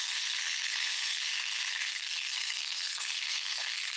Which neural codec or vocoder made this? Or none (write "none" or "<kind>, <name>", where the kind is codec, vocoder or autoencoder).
codec, SNAC